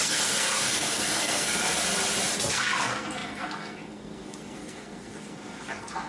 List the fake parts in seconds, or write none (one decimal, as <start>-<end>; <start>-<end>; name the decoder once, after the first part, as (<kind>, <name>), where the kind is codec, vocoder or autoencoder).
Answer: 0.0-1.6 (codec, SNAC); 2.5-6.1